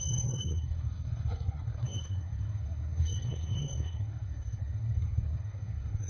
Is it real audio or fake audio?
fake